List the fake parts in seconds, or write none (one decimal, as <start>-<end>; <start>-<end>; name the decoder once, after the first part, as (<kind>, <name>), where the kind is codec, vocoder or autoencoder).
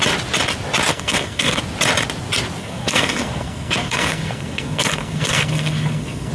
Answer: 0.9-1.6 (codec, SNAC); 2.6-6.3